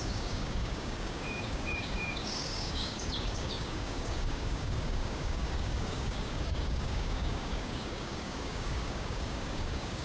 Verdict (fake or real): fake